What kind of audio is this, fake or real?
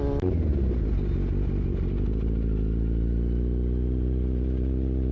real